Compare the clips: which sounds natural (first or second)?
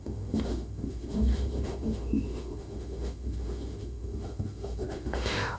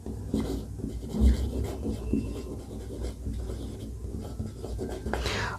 second